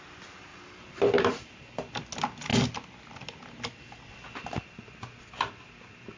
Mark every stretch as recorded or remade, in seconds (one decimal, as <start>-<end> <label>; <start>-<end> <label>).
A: 0.0-0.5 recorded; 0.5-1.5 remade; 1.5-6.2 recorded